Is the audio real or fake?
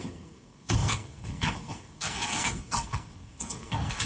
fake